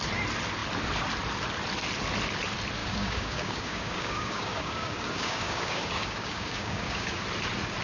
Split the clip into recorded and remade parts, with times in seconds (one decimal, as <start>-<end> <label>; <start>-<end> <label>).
0.0-2.8 recorded; 2.8-7.2 remade; 7.2-7.8 recorded